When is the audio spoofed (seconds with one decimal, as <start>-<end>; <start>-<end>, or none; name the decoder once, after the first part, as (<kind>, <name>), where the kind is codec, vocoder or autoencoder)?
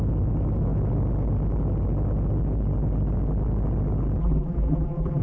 4.2-5.2 (vocoder, BigVGAN v2)